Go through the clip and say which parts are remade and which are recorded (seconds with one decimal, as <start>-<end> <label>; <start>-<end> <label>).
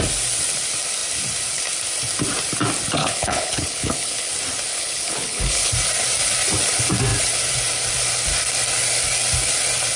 0.0-3.0 recorded; 3.0-4.3 remade; 4.3-4.7 recorded; 4.7-5.7 remade; 5.7-10.0 recorded